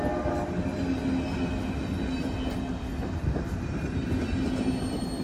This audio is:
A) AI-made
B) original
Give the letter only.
B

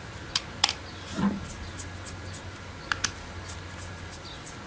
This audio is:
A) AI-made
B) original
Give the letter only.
B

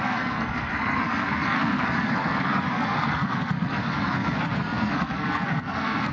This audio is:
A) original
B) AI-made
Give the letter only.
B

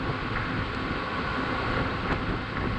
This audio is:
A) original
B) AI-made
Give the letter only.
A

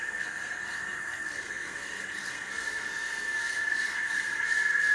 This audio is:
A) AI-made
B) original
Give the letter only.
A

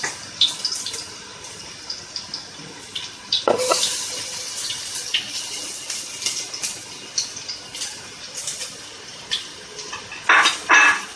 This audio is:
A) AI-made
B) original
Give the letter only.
B